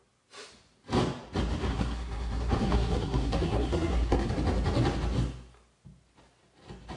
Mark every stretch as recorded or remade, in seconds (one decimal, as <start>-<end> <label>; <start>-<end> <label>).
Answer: 0.0-1.7 recorded; 1.7-4.3 remade; 4.3-7.0 recorded